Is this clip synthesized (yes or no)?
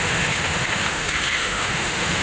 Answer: yes